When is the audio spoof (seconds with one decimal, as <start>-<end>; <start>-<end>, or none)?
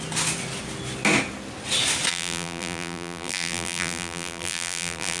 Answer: 2.1-5.2